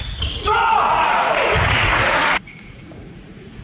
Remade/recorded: remade